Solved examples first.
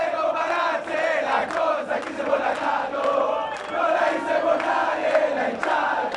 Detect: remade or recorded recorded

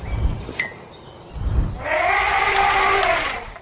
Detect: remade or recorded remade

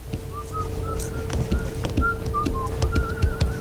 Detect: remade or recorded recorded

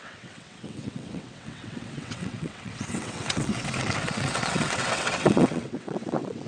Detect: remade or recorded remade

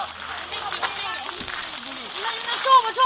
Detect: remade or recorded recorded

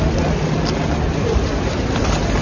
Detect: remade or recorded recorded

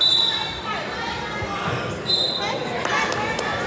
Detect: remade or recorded recorded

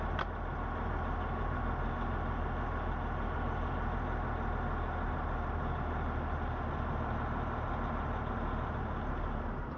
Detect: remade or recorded recorded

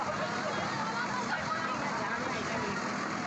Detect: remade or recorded recorded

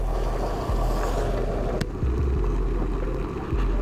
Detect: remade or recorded recorded